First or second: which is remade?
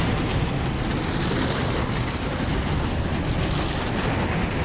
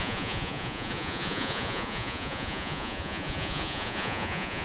second